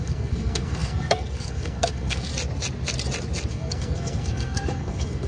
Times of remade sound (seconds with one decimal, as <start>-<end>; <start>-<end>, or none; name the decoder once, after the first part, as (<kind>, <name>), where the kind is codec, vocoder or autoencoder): 0.0-2.3 (codec, SNAC); 3.5-5.3